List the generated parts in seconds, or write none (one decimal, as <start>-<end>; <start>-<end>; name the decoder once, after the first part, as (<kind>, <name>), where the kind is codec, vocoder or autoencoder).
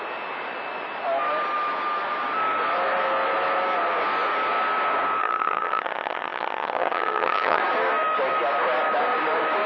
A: 5.2-7.6 (vocoder, HiFi-GAN)